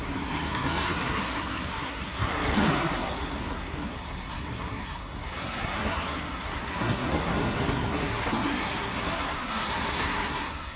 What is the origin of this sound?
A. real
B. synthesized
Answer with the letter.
B